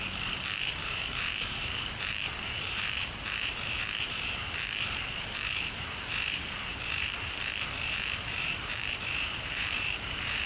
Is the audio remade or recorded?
remade